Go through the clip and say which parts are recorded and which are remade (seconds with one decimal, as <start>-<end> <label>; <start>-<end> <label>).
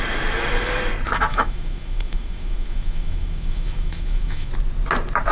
0.0-1.3 recorded; 1.3-4.5 remade; 4.5-5.3 recorded